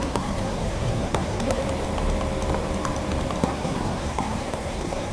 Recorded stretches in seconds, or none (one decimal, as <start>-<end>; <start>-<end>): 1.6-3.4